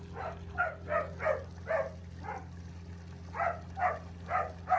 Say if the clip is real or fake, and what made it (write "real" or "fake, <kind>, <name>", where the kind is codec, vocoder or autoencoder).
real